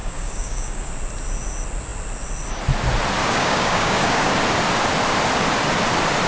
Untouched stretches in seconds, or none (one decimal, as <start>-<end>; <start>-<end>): 0.9-3.2; 4.3-6.3